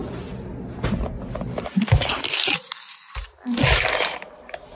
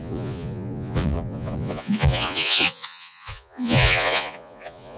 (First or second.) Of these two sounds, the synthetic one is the second